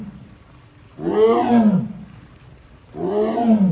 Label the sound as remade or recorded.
recorded